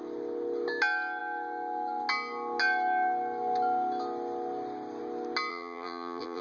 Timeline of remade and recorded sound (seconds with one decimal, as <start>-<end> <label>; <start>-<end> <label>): 0.0-5.5 recorded; 5.5-6.4 remade